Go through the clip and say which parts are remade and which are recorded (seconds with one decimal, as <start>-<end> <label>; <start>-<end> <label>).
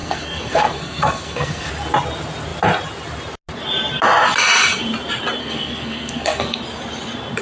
0.0-1.7 remade; 1.7-5.4 recorded; 5.4-6.6 remade; 6.6-7.4 recorded